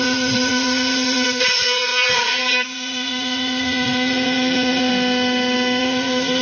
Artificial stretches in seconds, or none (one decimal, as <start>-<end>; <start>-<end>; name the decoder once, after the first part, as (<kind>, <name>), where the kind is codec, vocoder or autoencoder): 0.0-4.9 (vocoder, Vocos); 5.8-6.4